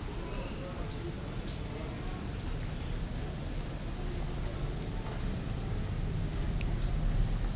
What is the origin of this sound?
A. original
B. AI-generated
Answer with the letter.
A